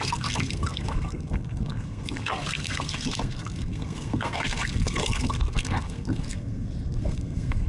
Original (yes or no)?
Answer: no